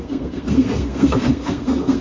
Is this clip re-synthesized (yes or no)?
yes